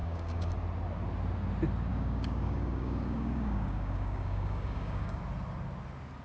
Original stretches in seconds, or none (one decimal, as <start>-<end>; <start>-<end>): 0.5-1.9; 5.2-6.2